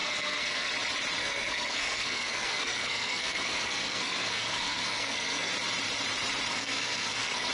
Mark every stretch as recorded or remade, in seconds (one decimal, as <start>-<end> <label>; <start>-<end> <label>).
0.0-0.7 remade; 0.7-1.2 recorded; 1.2-5.5 remade; 5.5-6.5 recorded; 6.5-7.5 remade